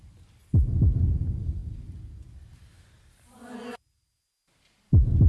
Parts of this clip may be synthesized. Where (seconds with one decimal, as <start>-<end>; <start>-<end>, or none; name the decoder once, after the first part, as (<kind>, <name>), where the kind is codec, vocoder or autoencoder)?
none